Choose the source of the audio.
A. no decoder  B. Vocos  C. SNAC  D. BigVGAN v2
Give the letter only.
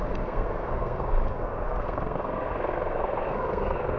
C